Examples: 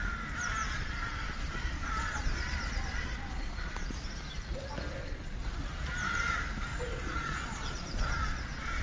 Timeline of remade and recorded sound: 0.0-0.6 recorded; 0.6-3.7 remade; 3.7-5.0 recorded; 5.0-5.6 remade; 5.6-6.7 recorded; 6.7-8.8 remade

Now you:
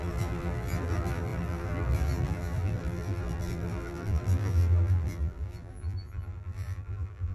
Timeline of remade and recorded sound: 0.0-7.3 remade

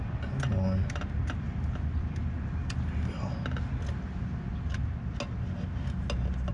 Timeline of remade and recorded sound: 0.0-6.5 recorded

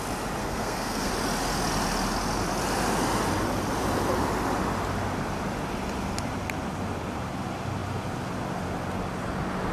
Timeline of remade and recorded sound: 0.0-0.4 recorded; 0.4-1.1 remade; 1.1-9.7 recorded

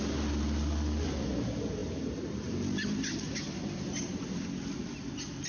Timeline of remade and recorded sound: 0.0-5.5 recorded

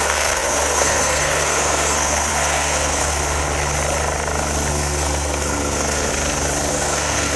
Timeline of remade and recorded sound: 0.0-3.2 remade; 3.2-4.7 recorded; 4.7-6.1 remade; 6.1-6.7 recorded; 6.7-7.4 remade

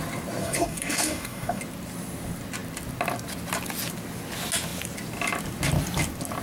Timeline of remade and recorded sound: 0.0-0.4 recorded; 0.4-1.6 remade; 1.6-6.4 recorded

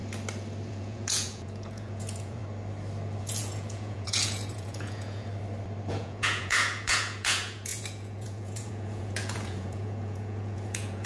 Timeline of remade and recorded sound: 0.0-0.7 recorded; 0.7-2.4 remade; 2.4-3.2 recorded; 3.2-5.3 remade; 5.3-5.9 recorded; 5.9-11.1 remade